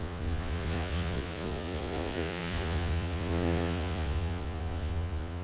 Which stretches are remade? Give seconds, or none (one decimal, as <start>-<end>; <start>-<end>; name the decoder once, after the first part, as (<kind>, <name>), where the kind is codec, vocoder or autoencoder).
0.0-5.4 (vocoder, Vocos)